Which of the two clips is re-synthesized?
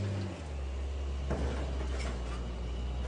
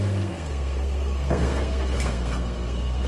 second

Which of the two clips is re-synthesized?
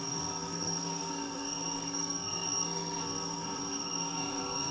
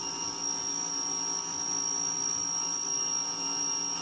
first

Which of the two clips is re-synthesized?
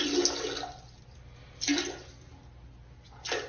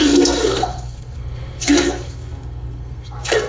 second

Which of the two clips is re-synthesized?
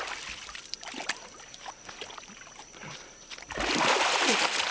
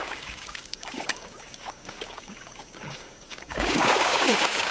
second